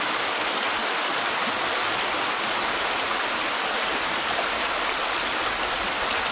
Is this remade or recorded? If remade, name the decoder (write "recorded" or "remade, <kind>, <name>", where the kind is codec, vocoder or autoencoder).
recorded